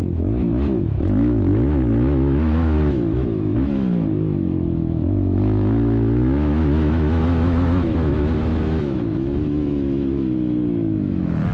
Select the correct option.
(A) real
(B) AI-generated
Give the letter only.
B